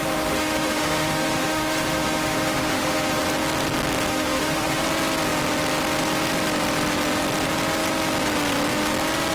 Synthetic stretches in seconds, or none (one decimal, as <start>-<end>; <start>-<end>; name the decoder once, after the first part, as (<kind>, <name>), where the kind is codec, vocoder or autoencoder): 0.0-3.2 (autoencoder, DAC-VAE); 4.1-4.8